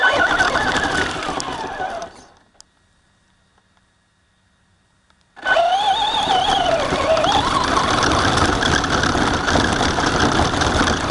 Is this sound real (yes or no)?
yes